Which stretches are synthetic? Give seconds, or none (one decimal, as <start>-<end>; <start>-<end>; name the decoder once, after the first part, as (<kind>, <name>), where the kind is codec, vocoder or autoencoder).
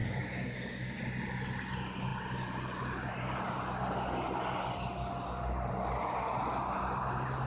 0.0-1.0 (codec, DAC)